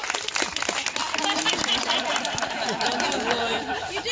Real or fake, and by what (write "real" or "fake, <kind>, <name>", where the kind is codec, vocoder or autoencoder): real